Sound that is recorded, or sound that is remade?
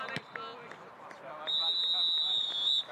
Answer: recorded